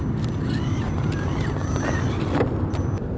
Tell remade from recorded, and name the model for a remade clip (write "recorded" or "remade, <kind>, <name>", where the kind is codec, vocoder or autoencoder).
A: recorded